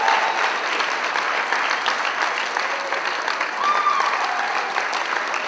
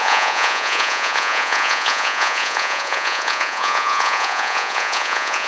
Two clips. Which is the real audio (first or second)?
first